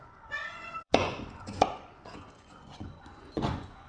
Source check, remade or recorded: remade